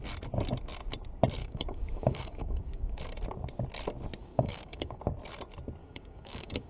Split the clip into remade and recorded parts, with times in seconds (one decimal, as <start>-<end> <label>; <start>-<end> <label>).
0.0-1.4 recorded; 1.4-3.0 remade; 3.0-4.2 recorded; 4.2-5.0 remade; 5.0-5.8 recorded; 5.8-6.7 remade